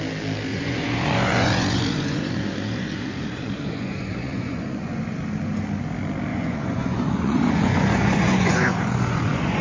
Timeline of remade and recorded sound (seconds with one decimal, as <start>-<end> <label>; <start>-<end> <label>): 0.0-0.5 recorded; 0.5-5.0 remade; 5.0-6.3 recorded; 6.3-9.6 remade

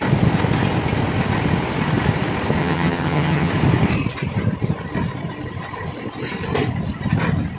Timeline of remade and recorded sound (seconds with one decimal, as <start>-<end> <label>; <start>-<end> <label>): 0.0-2.6 recorded; 2.6-3.5 remade; 3.5-7.6 recorded